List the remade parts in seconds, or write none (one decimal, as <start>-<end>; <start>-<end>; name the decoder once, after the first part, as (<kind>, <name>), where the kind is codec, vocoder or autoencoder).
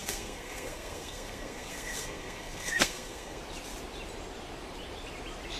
0.0-3.4 (codec, SNAC)